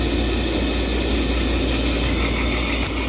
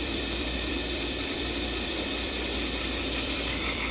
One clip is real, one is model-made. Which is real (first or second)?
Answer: first